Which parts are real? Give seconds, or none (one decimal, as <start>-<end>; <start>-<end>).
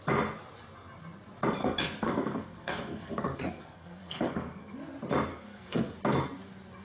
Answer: 0.0-1.6; 4.7-5.3; 6.0-6.8